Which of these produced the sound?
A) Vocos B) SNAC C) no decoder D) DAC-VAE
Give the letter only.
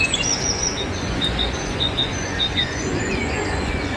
A